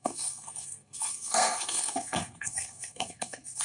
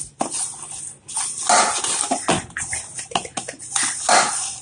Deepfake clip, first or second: first